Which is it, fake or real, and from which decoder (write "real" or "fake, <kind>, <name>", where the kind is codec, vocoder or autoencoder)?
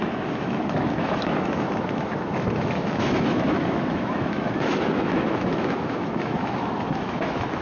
fake, autoencoder, DAC-VAE